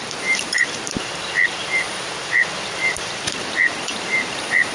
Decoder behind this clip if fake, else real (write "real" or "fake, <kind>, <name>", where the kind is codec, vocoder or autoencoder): fake, vocoder, BigVGAN v2